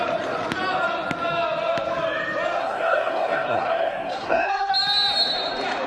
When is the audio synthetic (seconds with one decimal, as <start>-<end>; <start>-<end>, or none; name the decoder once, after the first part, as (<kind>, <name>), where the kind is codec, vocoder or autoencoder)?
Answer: 2.6-4.7 (codec, SNAC)